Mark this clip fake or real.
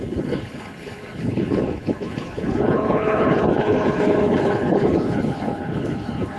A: fake